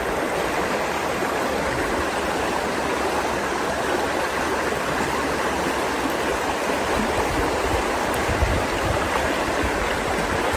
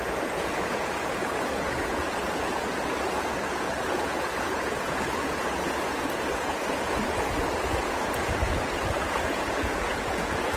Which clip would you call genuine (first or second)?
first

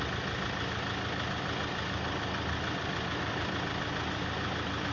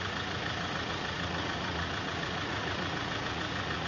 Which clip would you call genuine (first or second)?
first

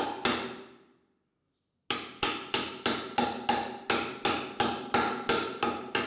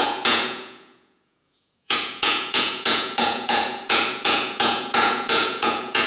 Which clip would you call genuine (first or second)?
first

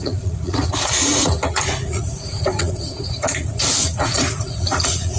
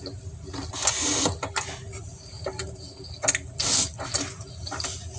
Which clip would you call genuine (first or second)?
second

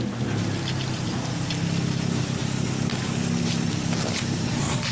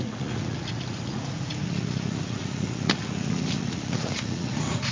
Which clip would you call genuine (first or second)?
first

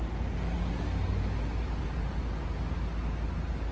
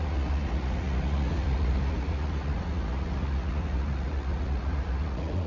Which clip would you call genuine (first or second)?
first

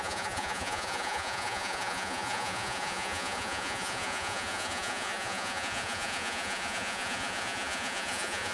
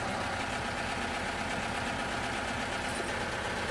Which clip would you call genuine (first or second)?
second